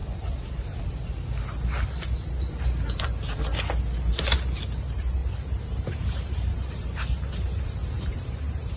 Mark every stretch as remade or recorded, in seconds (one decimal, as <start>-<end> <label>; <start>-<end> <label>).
0.0-4.8 recorded; 4.8-8.8 remade